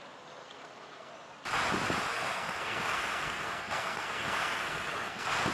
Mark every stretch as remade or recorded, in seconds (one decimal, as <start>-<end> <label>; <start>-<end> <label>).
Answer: 0.0-0.4 recorded; 0.4-1.1 remade; 1.1-2.1 recorded; 2.1-5.5 remade